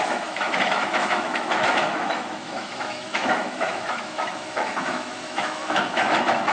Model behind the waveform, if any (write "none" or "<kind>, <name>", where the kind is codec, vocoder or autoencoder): autoencoder, DAC-VAE